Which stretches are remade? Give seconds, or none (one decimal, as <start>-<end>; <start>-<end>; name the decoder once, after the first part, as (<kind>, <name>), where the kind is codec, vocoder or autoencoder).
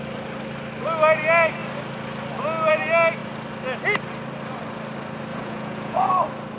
5.3-6.1 (vocoder, Vocos)